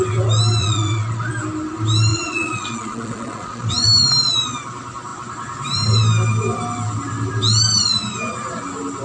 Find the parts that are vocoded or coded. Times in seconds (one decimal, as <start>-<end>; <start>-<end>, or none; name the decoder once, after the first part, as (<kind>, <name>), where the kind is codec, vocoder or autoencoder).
0.6-1.3 (vocoder, Vocos); 2.1-3.7